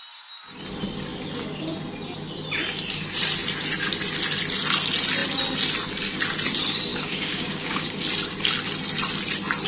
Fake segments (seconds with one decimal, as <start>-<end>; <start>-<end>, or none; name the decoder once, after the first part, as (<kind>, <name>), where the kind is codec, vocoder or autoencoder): 6.9-8.0 (codec, DAC)